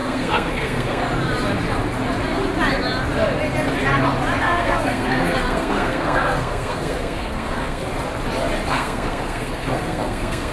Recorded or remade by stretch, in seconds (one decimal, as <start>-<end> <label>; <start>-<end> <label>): 0.0-1.0 remade; 1.0-4.4 recorded; 4.4-7.8 remade; 7.8-8.7 recorded; 8.7-10.5 remade

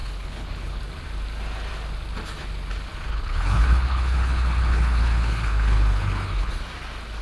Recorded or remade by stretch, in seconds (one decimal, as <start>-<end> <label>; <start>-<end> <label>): 0.0-0.8 remade; 0.8-3.1 recorded; 3.1-6.5 remade; 6.5-7.2 recorded

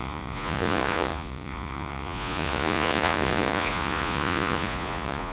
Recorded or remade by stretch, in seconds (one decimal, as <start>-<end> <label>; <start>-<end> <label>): 0.0-5.3 remade

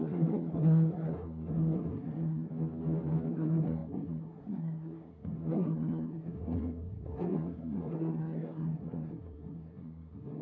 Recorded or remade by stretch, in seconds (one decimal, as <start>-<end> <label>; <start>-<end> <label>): 0.0-2.5 remade; 2.5-3.3 recorded; 3.3-10.4 remade

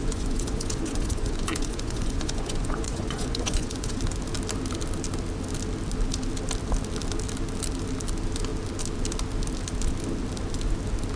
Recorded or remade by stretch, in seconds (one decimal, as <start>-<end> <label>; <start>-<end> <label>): 0.0-4.0 remade; 4.0-11.2 recorded

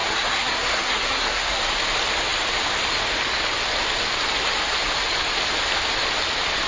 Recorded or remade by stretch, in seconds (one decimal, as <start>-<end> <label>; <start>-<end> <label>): 0.0-1.6 remade; 1.6-6.7 recorded

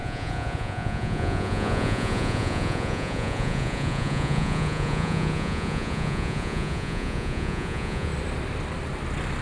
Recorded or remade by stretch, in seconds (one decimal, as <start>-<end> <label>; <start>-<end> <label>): 0.0-8.1 remade; 8.1-9.4 recorded